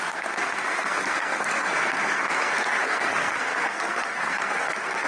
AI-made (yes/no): yes